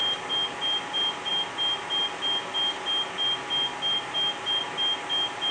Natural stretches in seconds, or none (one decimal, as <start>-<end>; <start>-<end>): 0.0-5.5